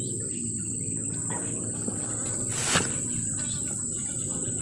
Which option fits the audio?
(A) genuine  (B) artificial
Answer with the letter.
A